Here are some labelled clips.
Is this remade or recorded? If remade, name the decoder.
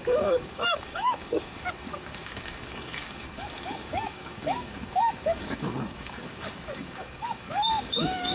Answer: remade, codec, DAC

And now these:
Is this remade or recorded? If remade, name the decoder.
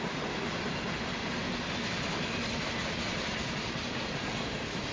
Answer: recorded